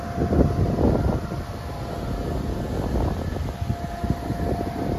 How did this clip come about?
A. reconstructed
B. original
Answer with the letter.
B